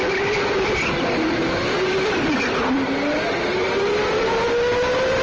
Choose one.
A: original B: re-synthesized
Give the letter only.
A